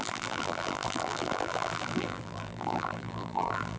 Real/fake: fake